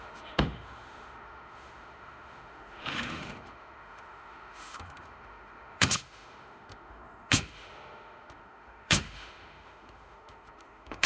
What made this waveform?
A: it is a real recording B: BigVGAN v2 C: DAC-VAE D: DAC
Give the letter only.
C